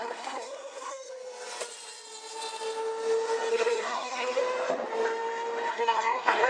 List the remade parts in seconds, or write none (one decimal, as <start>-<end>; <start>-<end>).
0.0-1.1; 3.5-4.4; 5.7-6.5

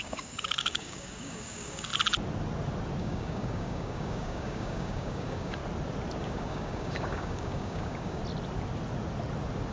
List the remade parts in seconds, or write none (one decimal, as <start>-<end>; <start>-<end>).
0.0-1.9; 3.0-5.6; 6.2-8.2

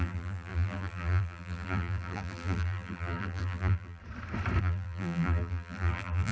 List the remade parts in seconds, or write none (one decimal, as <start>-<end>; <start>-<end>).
0.0-4.0; 4.6-6.3

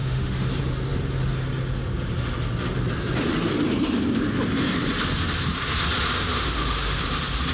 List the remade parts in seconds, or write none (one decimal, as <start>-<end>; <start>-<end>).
0.0-0.5; 6.3-7.0

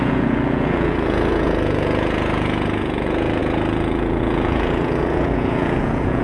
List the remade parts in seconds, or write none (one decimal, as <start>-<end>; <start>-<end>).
0.0-6.2

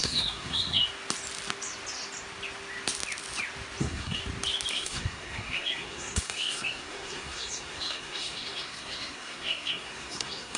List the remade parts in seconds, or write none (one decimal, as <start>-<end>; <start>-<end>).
0.0-0.8; 3.8-4.2; 4.7-10.6